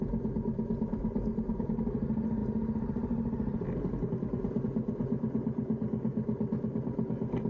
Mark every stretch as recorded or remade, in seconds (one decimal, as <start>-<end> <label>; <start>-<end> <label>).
0.0-7.5 recorded